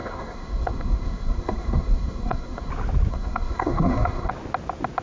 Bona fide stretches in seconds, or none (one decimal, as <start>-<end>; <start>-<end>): 2.7-3.1; 4.3-5.0